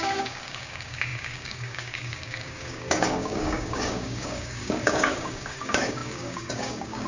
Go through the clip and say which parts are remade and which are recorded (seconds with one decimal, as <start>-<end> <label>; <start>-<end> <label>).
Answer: 0.0-7.1 remade